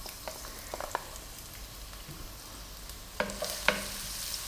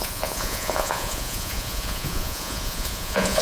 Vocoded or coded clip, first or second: second